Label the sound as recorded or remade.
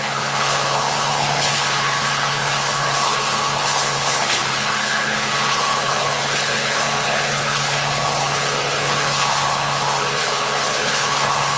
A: remade